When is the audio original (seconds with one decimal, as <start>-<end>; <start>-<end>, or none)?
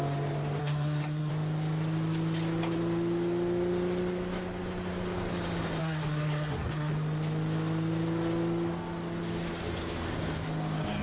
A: 0.0-0.6; 1.3-5.8; 6.9-11.0